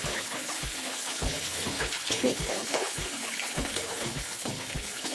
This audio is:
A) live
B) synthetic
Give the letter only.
B